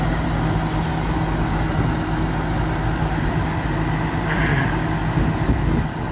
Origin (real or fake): real